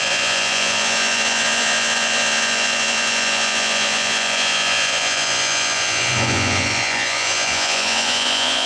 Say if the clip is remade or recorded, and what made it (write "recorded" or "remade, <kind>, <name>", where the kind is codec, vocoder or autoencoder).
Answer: remade, vocoder, Vocos